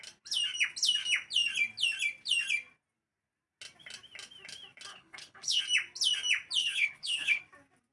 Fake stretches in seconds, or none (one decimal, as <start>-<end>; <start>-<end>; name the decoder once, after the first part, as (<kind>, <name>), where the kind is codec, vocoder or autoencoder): 4.9-5.6 (codec, HILCodec); 6.6-7.4